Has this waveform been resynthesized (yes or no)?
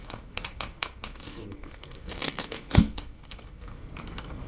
yes